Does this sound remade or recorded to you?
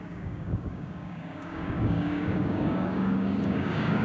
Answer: remade